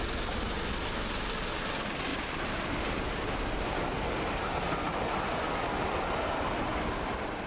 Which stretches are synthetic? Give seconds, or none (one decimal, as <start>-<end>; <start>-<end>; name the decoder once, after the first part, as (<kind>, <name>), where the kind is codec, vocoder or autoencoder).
2.1-3.2 (vocoder, BigVGAN v2)